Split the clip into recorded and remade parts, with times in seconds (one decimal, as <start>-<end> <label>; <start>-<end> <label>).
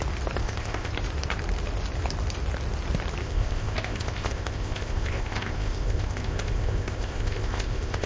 0.0-0.4 recorded; 0.4-0.9 remade; 0.9-3.2 recorded; 3.2-8.1 remade